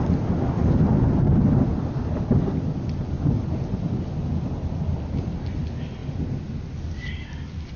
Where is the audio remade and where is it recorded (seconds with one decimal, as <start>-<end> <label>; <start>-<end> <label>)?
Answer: 0.0-7.8 recorded